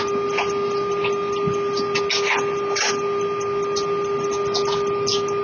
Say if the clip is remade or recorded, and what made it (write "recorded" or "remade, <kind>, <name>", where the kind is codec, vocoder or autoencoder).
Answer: recorded